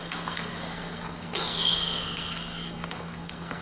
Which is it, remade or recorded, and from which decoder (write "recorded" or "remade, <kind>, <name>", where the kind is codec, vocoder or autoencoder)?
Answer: remade, codec, SNAC